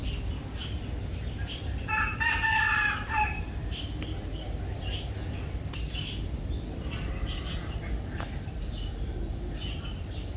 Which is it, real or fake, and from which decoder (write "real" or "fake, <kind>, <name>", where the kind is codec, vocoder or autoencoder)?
real